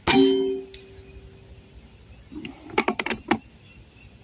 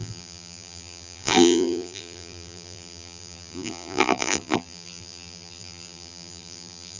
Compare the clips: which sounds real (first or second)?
first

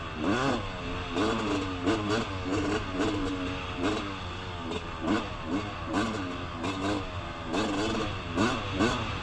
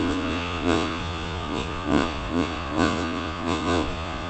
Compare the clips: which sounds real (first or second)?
first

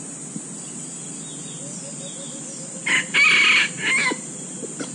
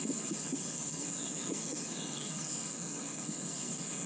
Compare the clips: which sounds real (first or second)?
first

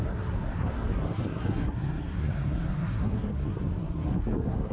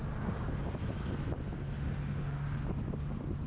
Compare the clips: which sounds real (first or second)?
second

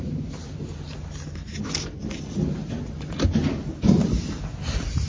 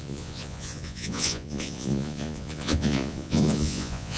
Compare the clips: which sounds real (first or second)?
first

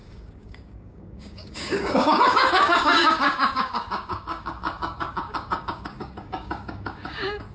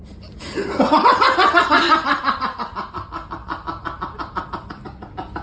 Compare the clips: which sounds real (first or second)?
second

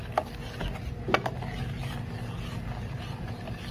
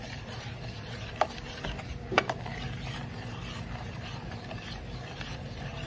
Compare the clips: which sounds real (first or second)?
first